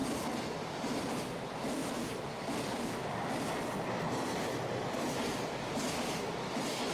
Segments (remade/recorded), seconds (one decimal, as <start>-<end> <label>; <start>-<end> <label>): 0.0-6.9 recorded